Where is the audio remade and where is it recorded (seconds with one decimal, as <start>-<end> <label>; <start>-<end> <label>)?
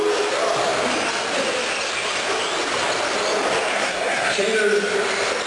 0.0-3.7 recorded; 3.7-4.4 remade; 4.4-5.5 recorded